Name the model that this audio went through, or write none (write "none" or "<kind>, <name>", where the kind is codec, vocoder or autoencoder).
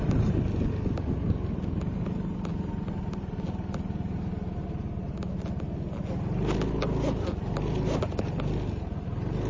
none